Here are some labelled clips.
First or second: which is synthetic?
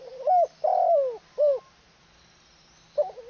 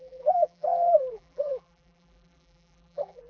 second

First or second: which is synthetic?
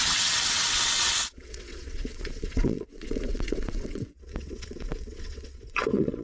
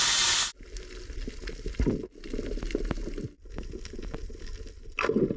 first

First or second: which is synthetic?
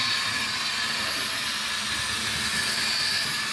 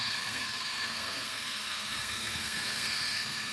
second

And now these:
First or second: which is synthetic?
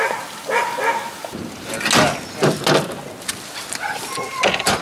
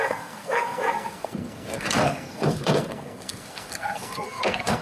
second